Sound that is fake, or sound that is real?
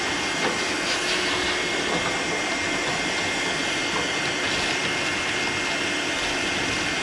real